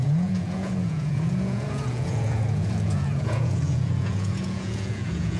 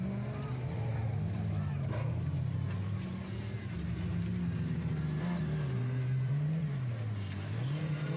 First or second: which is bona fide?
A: second